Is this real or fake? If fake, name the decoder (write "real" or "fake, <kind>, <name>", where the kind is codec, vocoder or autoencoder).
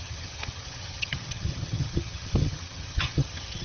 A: fake, vocoder, HiFi-GAN